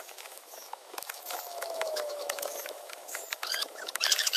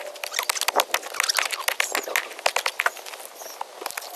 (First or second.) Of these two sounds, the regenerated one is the first